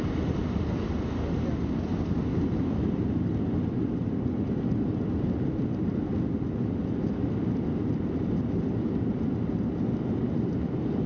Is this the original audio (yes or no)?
yes